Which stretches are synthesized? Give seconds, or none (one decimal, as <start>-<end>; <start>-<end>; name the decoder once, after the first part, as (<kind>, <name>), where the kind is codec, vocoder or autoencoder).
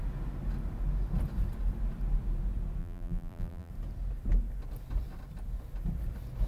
2.8-3.7 (vocoder, BigVGAN v2)